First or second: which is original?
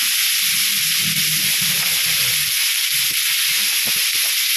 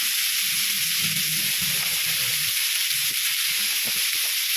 first